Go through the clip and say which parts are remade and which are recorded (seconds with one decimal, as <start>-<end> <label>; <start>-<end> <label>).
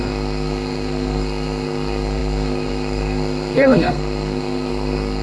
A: 0.0-5.2 remade